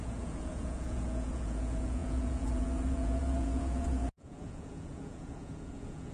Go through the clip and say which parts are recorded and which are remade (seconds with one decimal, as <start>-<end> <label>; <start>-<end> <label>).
0.0-6.1 remade